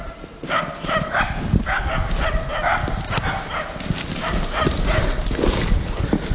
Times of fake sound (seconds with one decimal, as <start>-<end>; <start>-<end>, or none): none